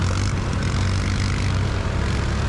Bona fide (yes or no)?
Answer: yes